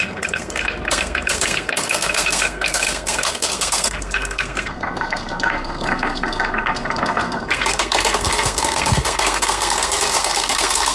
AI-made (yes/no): yes